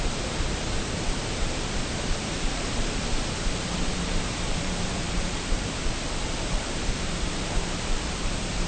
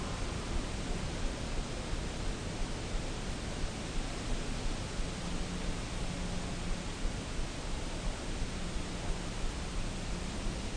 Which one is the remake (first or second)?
first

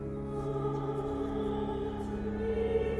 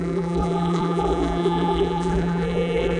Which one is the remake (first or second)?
second